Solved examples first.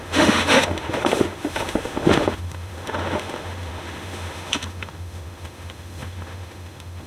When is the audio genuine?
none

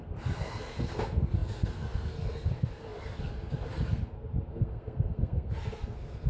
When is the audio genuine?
4.0-4.5

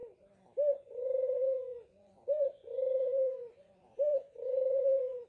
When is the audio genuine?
0.0-0.7

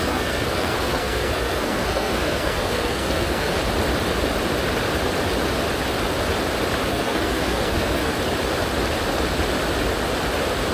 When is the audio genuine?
3.6-6.9; 8.1-10.7